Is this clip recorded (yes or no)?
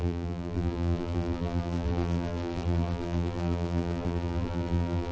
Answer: no